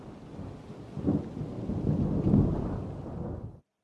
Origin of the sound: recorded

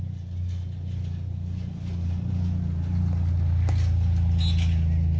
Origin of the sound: recorded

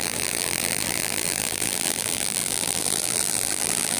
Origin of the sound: remade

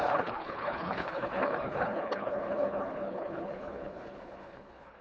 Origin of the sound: remade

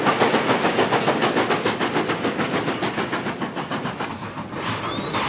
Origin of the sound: recorded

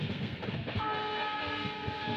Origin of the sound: remade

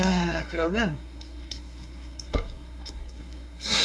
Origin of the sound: remade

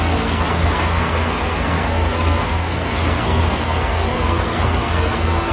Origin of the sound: remade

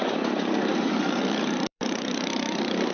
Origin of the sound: remade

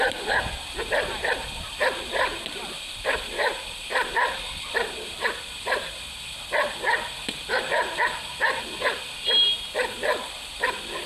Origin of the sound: recorded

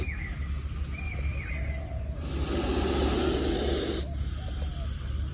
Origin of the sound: recorded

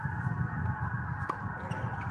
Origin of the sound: recorded